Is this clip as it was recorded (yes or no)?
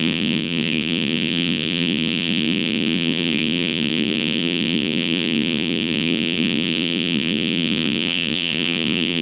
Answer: no